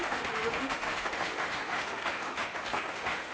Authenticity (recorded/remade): remade